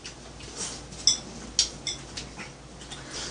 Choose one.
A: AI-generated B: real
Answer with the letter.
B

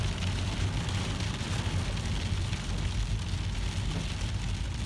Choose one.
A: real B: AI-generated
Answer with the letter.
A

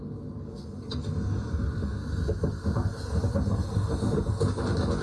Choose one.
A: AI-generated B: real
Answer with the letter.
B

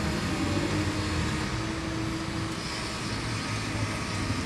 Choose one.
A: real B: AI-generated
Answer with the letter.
A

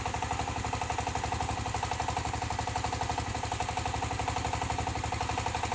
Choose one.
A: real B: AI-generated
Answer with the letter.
A